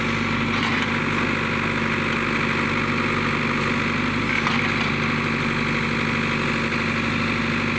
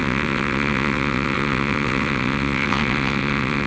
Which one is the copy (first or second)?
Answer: second